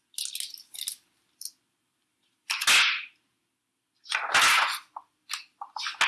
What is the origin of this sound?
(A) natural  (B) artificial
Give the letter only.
A